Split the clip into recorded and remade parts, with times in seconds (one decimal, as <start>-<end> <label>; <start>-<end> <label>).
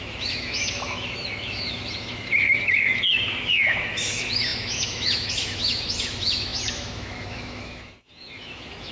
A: 0.0-8.9 remade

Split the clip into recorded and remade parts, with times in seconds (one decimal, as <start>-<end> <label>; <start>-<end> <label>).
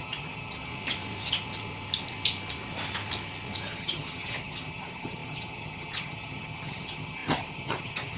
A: 0.0-0.7 remade; 0.7-3.7 recorded; 3.7-8.2 remade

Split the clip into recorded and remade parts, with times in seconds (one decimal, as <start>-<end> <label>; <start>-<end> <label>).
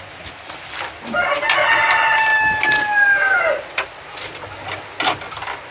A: 0.0-5.7 recorded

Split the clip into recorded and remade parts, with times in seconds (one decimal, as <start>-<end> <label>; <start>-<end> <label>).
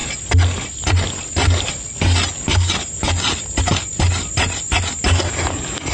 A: 0.0-5.9 recorded